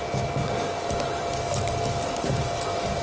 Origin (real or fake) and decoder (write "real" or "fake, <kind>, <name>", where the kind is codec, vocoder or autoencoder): real